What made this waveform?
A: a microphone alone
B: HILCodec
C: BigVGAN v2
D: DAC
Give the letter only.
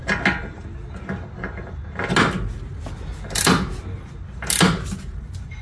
A